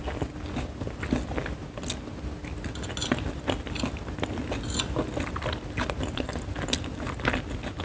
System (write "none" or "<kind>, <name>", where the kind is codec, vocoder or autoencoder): none